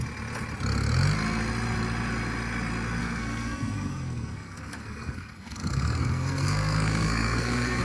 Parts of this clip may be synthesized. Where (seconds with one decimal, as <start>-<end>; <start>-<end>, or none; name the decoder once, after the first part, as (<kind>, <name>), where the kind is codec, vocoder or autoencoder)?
3.0-7.8 (codec, SNAC)